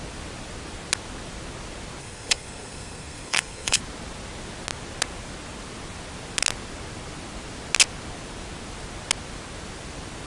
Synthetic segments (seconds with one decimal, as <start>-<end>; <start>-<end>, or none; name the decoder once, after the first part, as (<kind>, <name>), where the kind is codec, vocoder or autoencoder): 2.0-3.8 (codec, SNAC)